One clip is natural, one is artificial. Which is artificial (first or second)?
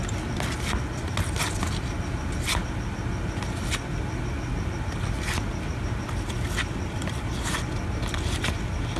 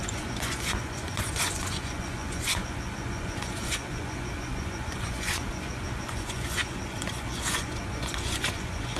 second